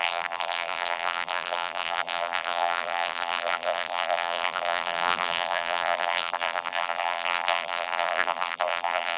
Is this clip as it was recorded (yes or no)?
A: no